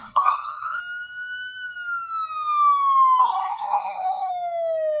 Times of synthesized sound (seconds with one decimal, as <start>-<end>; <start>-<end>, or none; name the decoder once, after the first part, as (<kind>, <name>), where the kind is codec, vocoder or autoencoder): 0.0-0.8 (codec, SNAC); 3.2-4.3